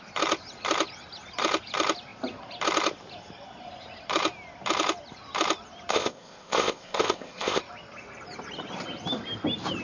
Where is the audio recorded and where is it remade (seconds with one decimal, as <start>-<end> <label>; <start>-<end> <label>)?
0.0-5.9 recorded; 5.9-7.6 remade; 7.6-9.8 recorded